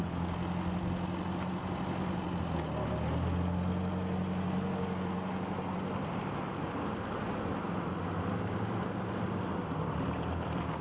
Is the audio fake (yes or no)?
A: no